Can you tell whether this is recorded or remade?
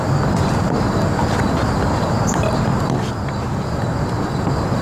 recorded